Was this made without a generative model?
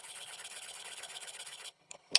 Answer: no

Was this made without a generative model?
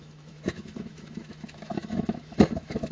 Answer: no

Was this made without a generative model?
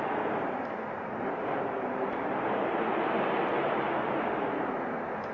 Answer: yes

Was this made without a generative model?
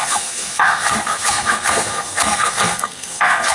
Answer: no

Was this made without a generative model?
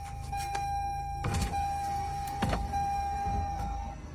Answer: no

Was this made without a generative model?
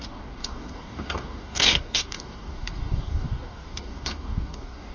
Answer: no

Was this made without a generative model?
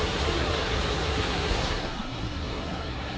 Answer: no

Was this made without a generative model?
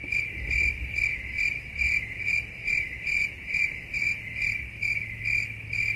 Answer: yes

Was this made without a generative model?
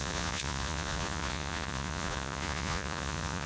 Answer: no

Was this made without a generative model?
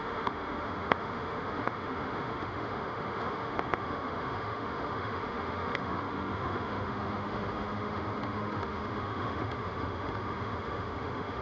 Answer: no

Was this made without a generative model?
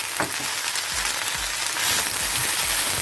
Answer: yes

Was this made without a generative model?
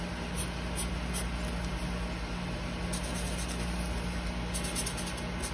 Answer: yes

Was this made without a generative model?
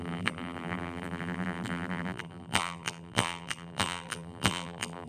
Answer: no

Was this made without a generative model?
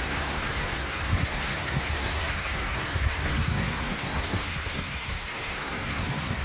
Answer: no